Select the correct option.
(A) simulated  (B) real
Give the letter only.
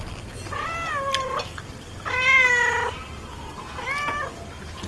B